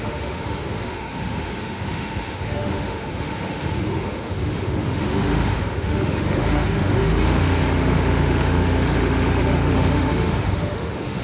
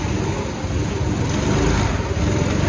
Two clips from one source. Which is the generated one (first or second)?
first